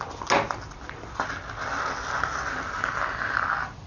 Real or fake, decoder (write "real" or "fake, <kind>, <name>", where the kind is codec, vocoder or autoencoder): real